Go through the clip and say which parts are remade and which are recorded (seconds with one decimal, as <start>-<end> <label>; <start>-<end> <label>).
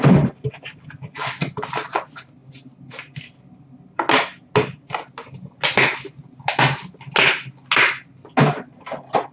0.0-9.3 recorded